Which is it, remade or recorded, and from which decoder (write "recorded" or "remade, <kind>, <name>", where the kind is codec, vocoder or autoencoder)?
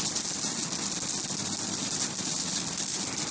recorded